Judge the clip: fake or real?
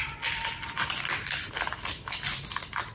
real